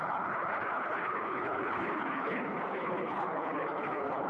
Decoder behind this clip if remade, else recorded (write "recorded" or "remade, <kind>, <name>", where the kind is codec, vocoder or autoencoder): remade, codec, HILCodec